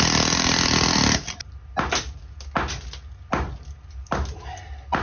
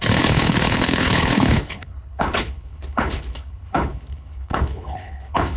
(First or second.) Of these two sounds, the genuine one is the first